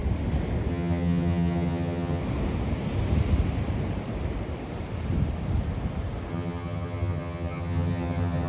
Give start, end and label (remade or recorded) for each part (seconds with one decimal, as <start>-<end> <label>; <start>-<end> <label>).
0.0-0.7 recorded; 0.7-2.2 remade; 2.2-6.3 recorded; 6.3-8.5 remade